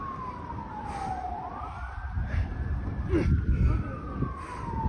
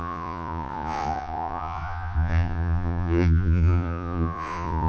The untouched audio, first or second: first